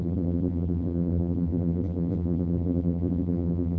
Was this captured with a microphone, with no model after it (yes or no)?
no